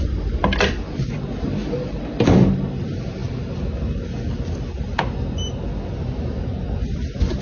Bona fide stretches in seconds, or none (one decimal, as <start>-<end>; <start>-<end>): 0.0-7.4

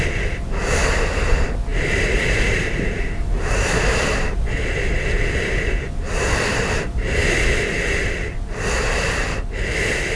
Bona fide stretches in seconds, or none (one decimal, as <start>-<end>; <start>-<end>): 0.0-1.7; 4.4-10.2

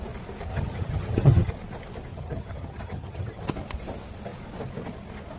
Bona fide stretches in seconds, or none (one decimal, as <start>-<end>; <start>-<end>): 0.0-0.5; 1.5-2.1; 3.4-5.4

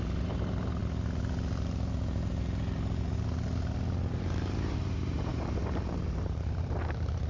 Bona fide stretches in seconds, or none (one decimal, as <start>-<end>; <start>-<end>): 0.8-4.1

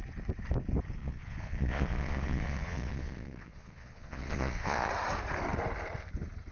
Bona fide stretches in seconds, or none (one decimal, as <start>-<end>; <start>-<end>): 0.0-1.0; 4.9-6.5

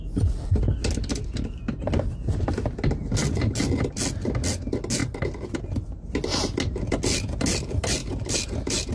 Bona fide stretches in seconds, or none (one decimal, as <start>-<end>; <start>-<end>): 0.0-8.9